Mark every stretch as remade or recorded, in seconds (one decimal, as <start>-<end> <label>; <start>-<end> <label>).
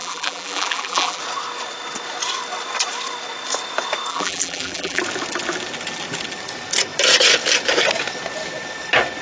0.0-1.2 remade; 1.2-4.1 recorded; 4.1-5.0 remade; 5.0-9.2 recorded